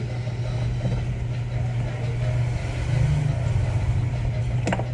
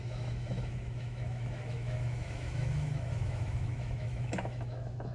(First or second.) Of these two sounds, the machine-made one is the second